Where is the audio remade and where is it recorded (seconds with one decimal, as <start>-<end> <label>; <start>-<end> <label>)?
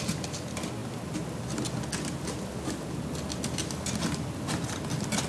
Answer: 0.0-5.3 recorded